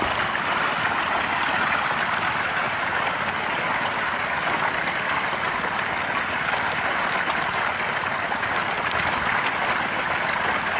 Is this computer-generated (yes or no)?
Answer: no